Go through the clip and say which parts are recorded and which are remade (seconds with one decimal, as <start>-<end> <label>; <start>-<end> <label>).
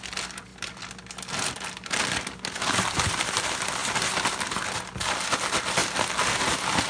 0.0-6.9 recorded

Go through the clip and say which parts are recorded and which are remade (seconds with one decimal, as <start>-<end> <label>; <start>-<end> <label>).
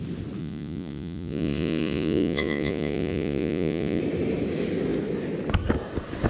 0.0-0.4 recorded; 0.4-4.0 remade; 4.0-6.3 recorded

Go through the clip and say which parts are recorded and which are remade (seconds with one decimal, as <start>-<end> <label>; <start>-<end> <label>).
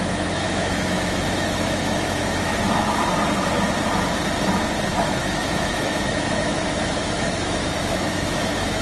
0.0-2.5 remade; 2.5-4.9 recorded; 4.9-8.8 remade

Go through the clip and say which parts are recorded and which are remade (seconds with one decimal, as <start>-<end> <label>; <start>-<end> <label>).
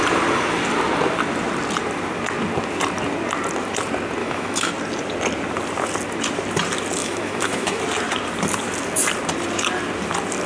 0.0-4.2 recorded; 4.2-4.7 remade; 4.7-7.0 recorded; 7.0-7.8 remade; 7.8-10.5 recorded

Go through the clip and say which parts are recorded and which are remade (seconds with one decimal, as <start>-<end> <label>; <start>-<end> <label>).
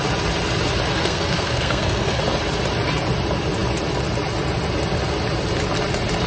0.0-0.9 recorded; 0.9-2.2 remade; 2.2-6.3 recorded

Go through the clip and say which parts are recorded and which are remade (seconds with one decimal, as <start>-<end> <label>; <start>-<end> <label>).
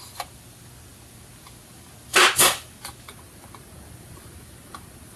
0.0-5.2 recorded